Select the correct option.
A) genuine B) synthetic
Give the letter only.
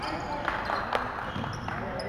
A